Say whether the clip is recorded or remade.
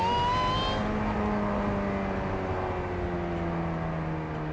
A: recorded